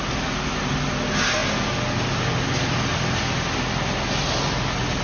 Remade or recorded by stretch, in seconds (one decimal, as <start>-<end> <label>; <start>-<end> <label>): 0.0-5.0 recorded